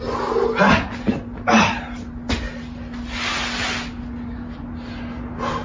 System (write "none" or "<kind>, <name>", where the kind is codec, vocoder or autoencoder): none